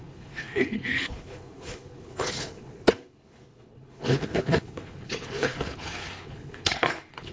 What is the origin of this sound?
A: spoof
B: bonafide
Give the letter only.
A